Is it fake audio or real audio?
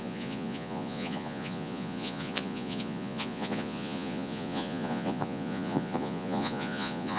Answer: fake